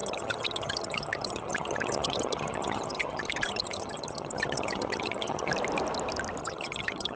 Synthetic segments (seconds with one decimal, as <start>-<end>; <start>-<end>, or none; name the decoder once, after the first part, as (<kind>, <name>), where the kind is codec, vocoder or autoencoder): 0.0-5.5 (vocoder, HiFi-GAN); 6.4-7.2